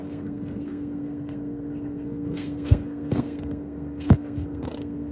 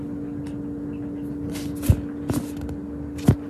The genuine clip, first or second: second